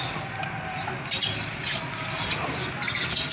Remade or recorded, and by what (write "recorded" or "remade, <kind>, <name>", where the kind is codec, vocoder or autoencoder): recorded